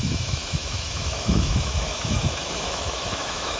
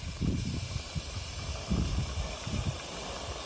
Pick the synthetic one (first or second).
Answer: first